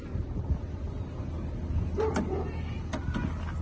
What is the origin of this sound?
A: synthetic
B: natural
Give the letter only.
B